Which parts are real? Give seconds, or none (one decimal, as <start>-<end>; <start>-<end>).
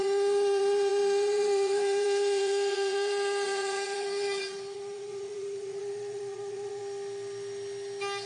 6.8-8.3